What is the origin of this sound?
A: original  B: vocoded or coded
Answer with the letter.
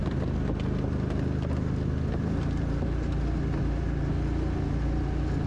A